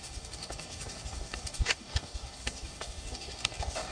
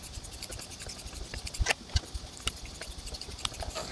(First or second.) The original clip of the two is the second